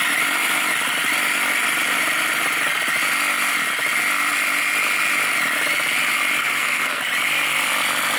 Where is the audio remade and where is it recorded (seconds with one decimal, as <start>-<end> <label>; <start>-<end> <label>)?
0.0-6.4 recorded; 6.4-7.0 remade; 7.0-8.2 recorded